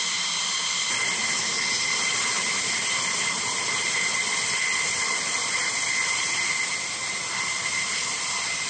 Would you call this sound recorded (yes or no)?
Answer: yes